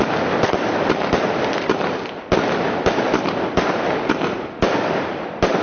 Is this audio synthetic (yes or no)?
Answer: no